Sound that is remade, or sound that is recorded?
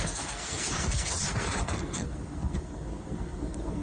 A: remade